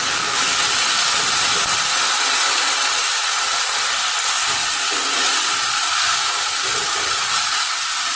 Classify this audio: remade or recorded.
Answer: recorded